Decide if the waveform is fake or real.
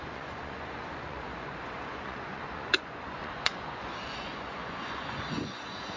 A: fake